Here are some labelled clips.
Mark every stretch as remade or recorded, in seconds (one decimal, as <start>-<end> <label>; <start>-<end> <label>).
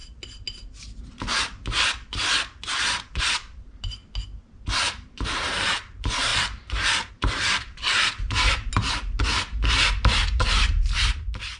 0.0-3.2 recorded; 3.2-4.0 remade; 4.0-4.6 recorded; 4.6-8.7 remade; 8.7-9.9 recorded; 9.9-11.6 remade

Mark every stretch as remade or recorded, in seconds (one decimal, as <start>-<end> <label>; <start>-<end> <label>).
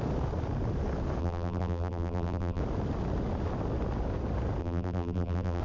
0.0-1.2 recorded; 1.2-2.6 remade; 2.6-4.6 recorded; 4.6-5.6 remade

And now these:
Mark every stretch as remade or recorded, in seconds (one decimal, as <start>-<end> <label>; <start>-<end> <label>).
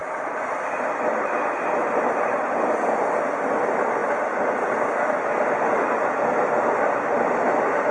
0.0-4.0 recorded; 4.0-4.7 remade; 4.7-7.9 recorded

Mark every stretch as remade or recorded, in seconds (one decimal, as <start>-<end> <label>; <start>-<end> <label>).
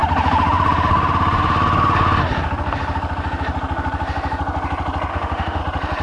0.0-5.1 recorded; 5.1-5.6 remade; 5.6-6.0 recorded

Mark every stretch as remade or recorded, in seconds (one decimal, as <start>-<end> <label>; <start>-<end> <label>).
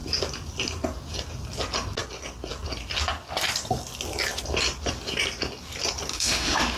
0.0-6.1 recorded; 6.1-6.8 remade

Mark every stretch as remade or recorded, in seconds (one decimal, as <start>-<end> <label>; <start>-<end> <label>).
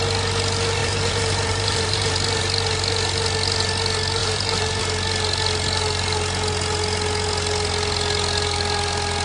0.0-0.8 recorded; 0.8-2.1 remade; 2.1-4.2 recorded; 4.2-4.8 remade; 4.8-9.2 recorded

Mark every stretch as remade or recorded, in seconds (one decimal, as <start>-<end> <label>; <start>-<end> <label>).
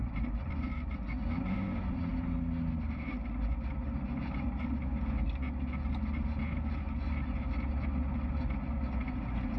0.0-0.5 remade; 0.5-9.6 recorded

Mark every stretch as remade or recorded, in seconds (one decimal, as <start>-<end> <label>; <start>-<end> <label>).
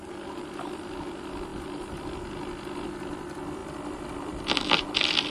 0.0-1.5 recorded; 1.5-2.0 remade; 2.0-3.6 recorded; 3.6-4.6 remade; 4.6-5.3 recorded